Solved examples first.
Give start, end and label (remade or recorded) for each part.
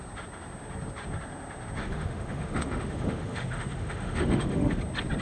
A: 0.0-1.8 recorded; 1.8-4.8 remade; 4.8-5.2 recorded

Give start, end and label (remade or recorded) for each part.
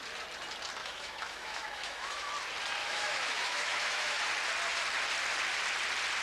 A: 0.0-0.8 recorded; 0.8-2.3 remade; 2.3-2.8 recorded; 2.8-4.2 remade; 4.2-6.2 recorded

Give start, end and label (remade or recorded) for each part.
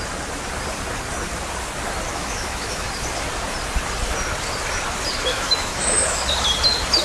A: 0.0-2.1 recorded; 2.1-2.9 remade; 2.9-5.3 recorded; 5.3-6.3 remade; 6.3-7.0 recorded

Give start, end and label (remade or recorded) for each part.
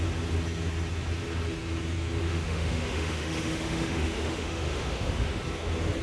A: 0.0-2.2 recorded; 2.2-5.4 remade; 5.4-6.0 recorded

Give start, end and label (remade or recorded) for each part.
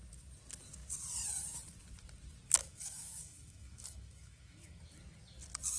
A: 0.0-2.6 recorded; 2.6-4.8 remade; 4.8-5.8 recorded